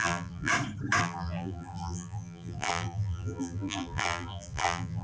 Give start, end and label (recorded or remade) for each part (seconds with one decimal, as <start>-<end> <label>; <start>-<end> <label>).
0.0-0.5 remade; 0.5-1.0 recorded; 1.0-5.0 remade